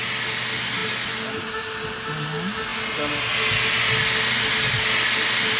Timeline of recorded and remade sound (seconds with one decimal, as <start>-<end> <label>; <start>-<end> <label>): 0.0-5.6 recorded